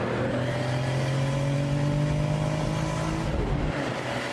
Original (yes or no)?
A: yes